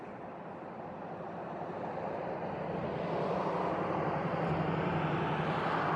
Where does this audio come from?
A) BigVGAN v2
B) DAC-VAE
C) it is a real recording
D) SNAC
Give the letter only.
A